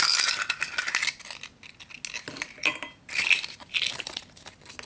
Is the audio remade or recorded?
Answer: recorded